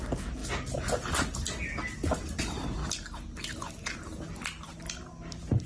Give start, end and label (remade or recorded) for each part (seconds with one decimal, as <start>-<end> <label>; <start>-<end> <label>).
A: 0.0-5.7 recorded